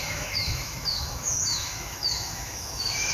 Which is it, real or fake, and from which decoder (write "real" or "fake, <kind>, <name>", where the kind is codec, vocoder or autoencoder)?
fake, autoencoder, DAC-VAE